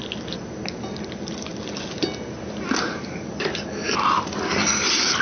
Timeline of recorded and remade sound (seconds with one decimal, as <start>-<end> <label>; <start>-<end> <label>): 0.0-5.2 recorded